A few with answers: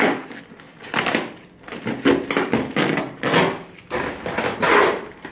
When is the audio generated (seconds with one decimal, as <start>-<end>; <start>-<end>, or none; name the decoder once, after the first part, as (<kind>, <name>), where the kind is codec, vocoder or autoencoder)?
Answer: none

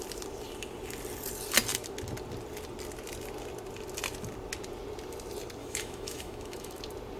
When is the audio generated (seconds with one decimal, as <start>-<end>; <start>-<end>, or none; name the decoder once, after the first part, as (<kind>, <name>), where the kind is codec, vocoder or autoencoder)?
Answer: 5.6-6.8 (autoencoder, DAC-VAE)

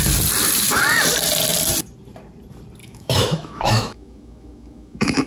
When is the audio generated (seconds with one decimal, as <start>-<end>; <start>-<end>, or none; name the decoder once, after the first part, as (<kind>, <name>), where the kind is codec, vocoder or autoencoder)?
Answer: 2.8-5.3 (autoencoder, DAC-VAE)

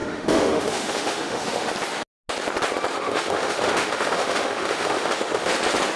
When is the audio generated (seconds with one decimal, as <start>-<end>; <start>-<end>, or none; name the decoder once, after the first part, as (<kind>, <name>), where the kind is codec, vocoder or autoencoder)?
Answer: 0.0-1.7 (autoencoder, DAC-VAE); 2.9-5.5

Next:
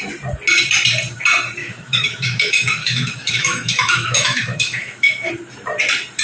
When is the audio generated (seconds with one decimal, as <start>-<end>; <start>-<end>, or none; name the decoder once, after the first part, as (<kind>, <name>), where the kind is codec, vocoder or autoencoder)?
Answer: 1.6-5.3 (autoencoder, DAC-VAE)